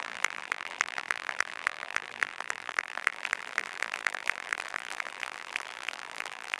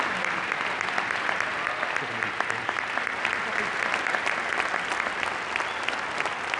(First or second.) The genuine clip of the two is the second